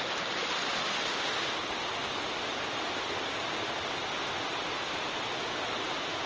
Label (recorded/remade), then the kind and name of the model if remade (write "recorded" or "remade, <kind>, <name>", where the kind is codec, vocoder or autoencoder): recorded